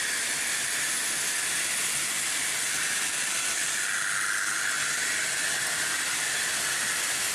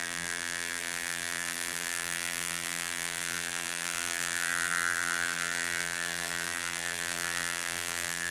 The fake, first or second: second